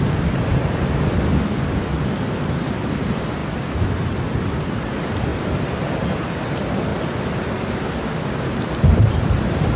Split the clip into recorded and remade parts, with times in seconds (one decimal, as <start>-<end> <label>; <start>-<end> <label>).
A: 0.0-3.4 remade; 3.4-4.8 recorded; 4.8-5.3 remade; 5.3-6.0 recorded; 6.0-6.9 remade; 6.9-9.1 recorded; 9.1-9.8 remade